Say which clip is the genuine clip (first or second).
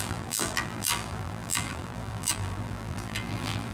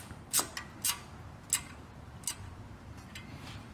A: second